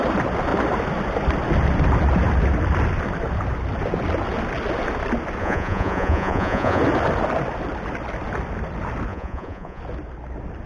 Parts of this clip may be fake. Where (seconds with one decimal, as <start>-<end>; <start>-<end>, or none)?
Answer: 5.4-6.8; 9.1-9.8